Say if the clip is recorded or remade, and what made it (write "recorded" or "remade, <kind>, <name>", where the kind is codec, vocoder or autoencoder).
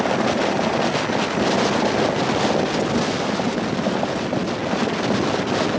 recorded